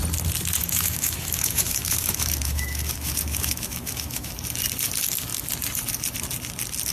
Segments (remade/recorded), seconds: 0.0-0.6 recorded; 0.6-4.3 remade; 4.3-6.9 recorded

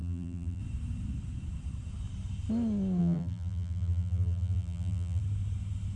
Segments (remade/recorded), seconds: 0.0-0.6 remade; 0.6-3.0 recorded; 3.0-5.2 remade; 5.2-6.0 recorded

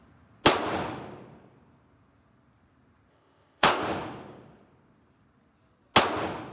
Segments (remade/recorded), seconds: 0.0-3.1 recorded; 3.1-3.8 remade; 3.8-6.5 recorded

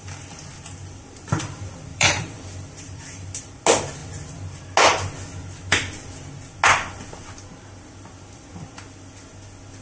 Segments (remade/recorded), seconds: 0.0-0.8 recorded; 0.8-1.4 remade; 1.4-1.9 recorded; 1.9-3.4 remade; 3.4-9.8 recorded

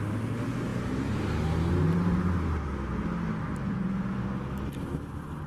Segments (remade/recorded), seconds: 0.0-5.5 recorded

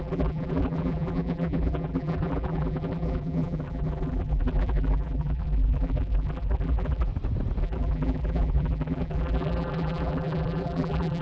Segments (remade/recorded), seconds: 0.0-7.1 remade; 7.1-7.6 recorded; 7.6-11.2 remade

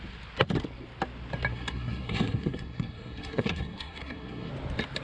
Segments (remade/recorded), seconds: 0.0-1.5 recorded; 1.5-4.5 remade; 4.5-5.0 recorded

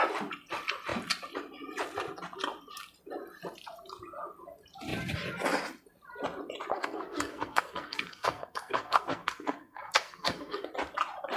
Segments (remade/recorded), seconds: 0.0-6.7 recorded; 6.7-10.7 remade; 10.7-11.4 recorded